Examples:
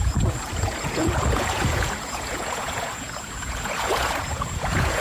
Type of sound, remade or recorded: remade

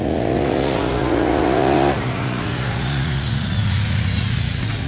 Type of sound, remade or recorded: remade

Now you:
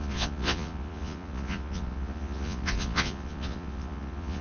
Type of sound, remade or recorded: remade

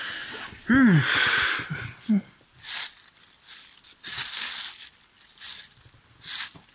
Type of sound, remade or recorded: recorded